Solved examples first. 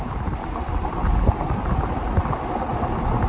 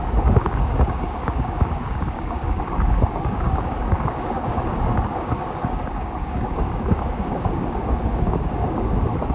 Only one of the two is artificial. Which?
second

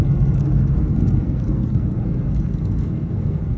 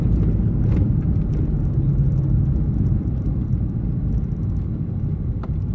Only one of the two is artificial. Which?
first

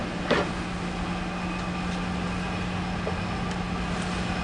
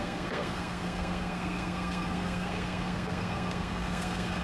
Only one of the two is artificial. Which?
second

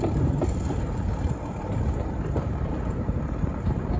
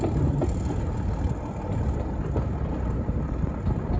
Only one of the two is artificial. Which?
first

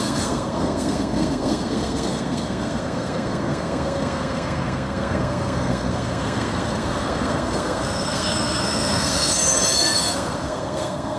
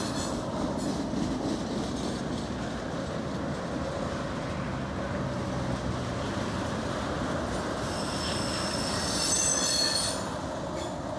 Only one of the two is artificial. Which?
first